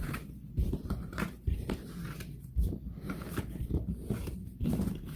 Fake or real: fake